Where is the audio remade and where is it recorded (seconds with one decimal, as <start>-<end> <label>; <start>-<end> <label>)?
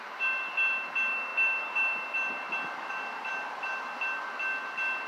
0.0-5.1 recorded